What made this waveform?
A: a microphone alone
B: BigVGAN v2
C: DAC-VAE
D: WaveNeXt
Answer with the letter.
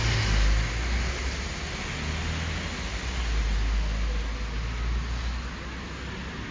A